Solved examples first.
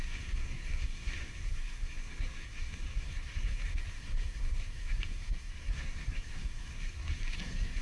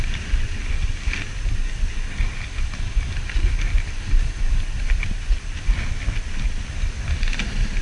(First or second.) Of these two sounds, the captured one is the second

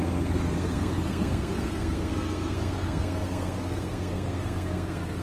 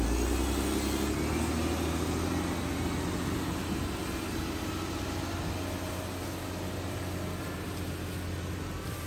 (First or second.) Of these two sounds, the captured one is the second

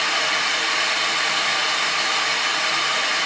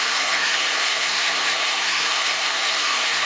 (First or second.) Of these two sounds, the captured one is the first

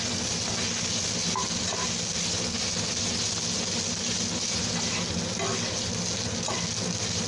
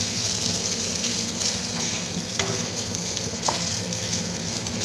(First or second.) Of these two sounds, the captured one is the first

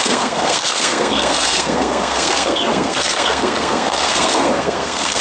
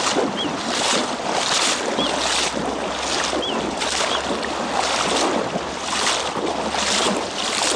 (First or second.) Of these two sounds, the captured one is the second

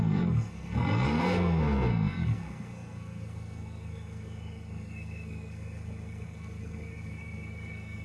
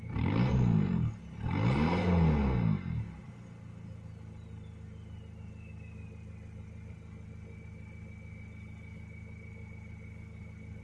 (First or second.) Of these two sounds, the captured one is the second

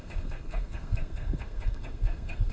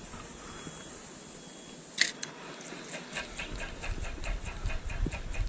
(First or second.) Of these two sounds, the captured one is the second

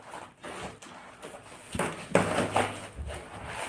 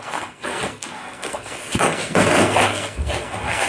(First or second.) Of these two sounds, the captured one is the first